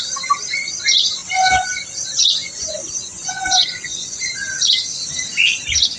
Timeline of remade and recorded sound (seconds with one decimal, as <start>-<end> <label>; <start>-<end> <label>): 0.0-2.4 recorded; 2.4-4.3 remade; 4.3-6.0 recorded